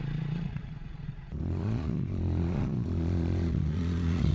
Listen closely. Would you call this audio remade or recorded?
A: remade